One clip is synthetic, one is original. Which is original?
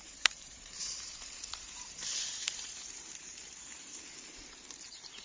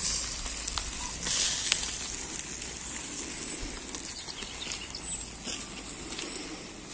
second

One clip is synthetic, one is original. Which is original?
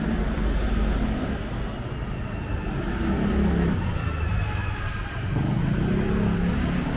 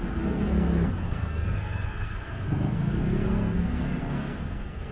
first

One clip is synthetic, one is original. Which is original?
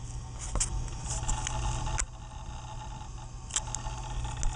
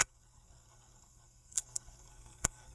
first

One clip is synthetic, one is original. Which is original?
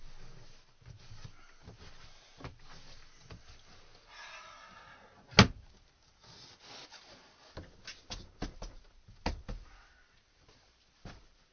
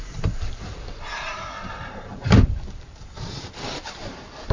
first